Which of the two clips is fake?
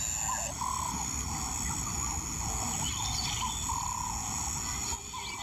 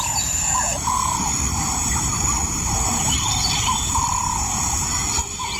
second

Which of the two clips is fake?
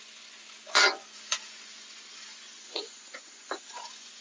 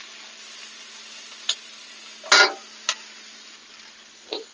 first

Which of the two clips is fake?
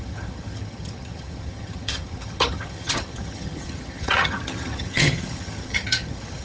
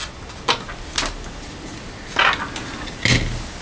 first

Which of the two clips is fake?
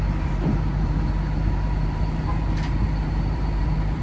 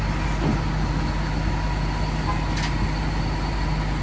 first